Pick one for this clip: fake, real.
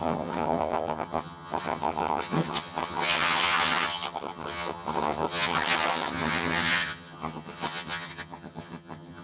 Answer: fake